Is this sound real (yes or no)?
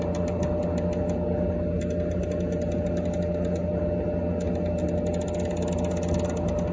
yes